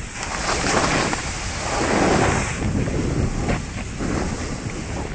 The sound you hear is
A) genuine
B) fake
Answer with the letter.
A